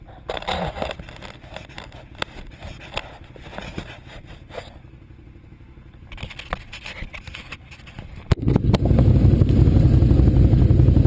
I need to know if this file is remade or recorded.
recorded